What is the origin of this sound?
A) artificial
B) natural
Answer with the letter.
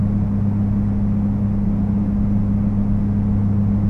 B